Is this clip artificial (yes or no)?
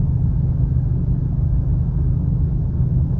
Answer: no